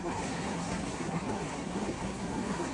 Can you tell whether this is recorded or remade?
remade